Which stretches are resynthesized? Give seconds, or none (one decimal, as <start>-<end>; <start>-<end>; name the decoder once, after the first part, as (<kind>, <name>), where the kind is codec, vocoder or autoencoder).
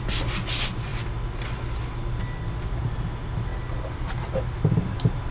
none